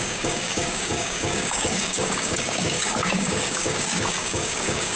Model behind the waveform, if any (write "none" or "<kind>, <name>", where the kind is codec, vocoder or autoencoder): codec, DAC